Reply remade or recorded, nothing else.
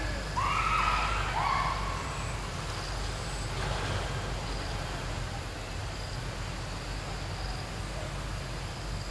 recorded